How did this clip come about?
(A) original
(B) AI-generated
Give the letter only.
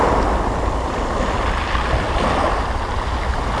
A